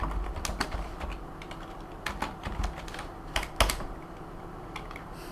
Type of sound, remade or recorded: recorded